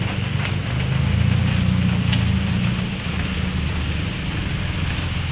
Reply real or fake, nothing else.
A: real